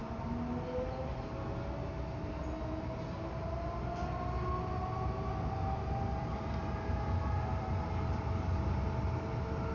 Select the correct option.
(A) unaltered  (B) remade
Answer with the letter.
A